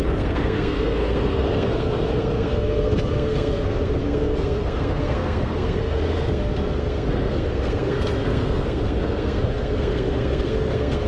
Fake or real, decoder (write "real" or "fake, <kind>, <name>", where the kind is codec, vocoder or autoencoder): fake, codec, SNAC